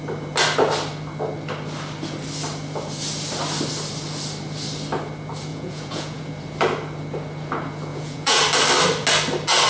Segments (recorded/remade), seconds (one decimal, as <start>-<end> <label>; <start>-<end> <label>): 0.0-5.5 recorded; 5.5-6.2 remade; 6.2-7.9 recorded; 7.9-8.4 remade; 8.4-9.7 recorded